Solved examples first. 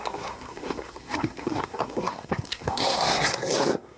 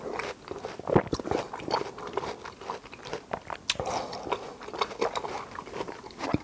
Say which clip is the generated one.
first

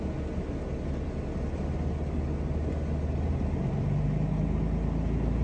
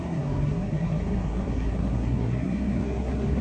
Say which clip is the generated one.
second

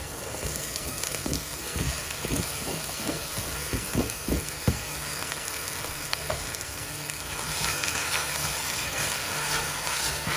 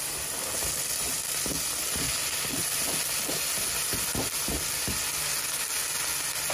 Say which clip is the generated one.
first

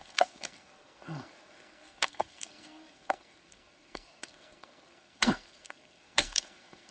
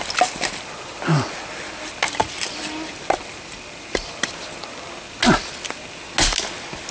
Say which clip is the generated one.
first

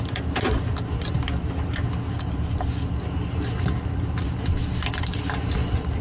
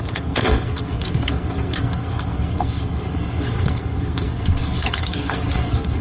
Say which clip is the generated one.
second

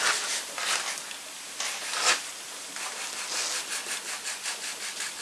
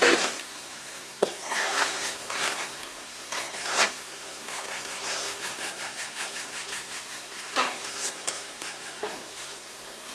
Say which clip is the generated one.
second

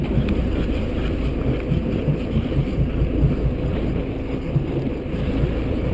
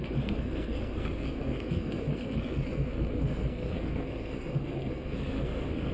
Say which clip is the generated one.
second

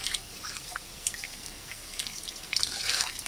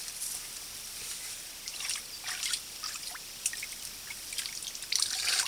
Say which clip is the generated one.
first